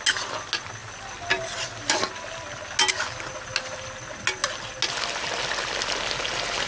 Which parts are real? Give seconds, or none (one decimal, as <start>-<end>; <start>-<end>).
0.0-6.7